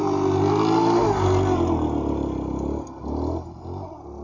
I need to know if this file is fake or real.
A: real